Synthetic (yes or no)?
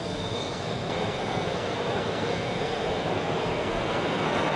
yes